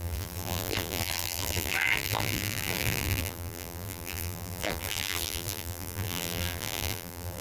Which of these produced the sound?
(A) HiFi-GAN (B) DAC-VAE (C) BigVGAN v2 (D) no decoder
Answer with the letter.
C